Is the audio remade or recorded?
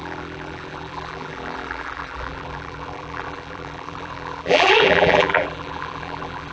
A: remade